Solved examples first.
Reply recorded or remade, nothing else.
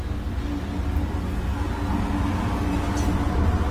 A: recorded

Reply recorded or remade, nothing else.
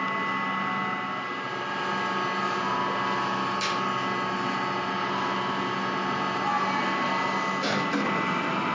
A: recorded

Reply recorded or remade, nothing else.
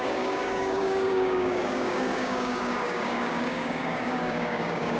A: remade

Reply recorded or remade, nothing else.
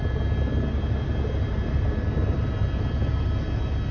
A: recorded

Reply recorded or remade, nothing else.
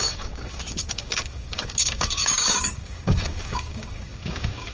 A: remade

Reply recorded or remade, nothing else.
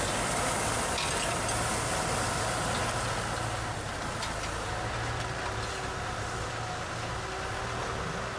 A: recorded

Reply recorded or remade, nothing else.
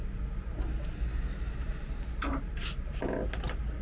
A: recorded